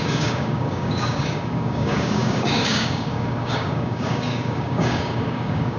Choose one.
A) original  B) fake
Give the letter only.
B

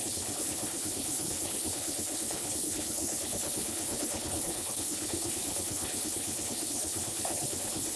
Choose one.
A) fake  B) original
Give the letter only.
A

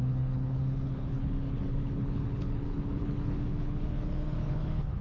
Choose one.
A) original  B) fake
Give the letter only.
B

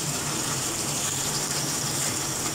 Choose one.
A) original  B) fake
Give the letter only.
B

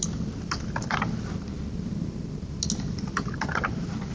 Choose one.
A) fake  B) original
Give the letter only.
B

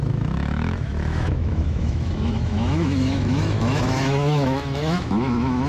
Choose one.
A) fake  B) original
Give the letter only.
A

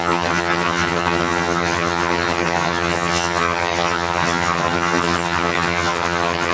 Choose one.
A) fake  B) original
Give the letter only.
A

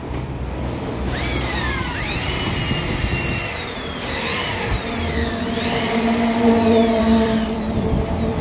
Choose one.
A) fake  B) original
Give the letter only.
A